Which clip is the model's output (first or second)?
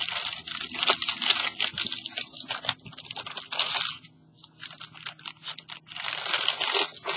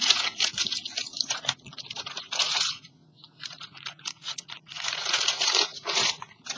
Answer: second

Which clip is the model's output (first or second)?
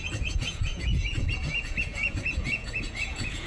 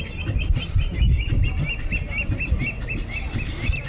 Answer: first